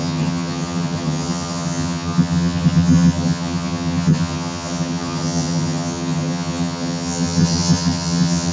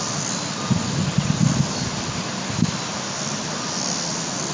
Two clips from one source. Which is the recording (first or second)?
second